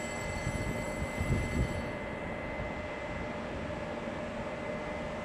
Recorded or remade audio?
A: recorded